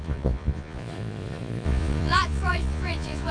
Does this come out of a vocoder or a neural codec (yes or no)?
yes